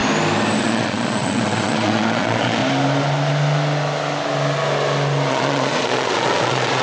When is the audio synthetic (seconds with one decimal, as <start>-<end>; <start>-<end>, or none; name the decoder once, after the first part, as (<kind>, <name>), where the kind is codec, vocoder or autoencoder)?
0.6-2.6 (vocoder, Vocos); 5.3-6.8